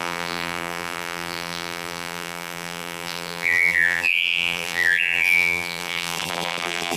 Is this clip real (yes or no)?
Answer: no